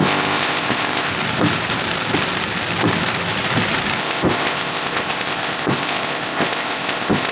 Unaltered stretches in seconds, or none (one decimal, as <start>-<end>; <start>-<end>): 1.1-4.0